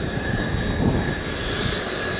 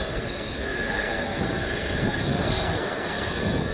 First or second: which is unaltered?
first